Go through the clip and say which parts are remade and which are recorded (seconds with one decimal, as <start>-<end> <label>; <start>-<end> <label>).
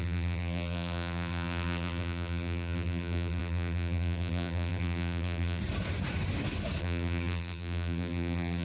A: 0.0-5.6 remade; 5.6-6.8 recorded; 6.8-8.6 remade